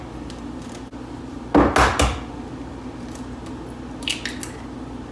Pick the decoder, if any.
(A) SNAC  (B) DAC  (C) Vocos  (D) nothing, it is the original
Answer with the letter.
D